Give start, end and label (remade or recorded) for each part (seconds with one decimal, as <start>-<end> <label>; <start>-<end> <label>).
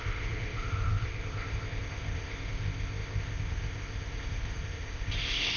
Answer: 0.0-5.6 remade